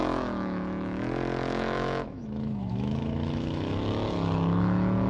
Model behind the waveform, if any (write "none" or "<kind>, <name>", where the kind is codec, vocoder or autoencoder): autoencoder, DAC-VAE